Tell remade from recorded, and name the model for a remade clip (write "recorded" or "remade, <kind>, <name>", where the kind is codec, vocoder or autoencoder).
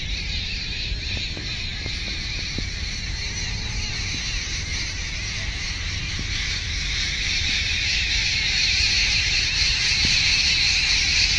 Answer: recorded